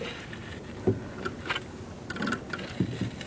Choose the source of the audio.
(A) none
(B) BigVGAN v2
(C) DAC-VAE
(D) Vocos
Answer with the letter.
A